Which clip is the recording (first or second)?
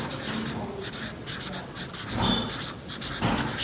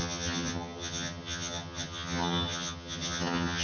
first